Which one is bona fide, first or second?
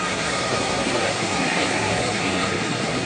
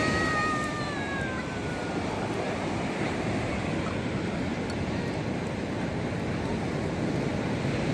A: second